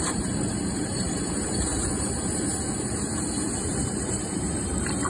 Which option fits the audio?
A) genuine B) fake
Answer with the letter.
B